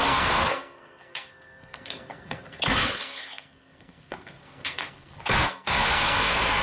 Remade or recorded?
remade